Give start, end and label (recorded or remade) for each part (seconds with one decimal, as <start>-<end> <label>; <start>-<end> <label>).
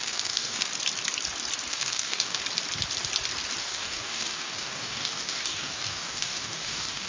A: 0.0-0.7 remade; 0.7-1.7 recorded; 1.7-2.4 remade; 2.4-3.6 recorded; 3.6-7.1 remade